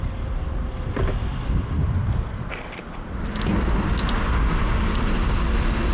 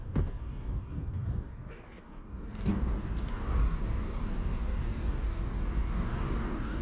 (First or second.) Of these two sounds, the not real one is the second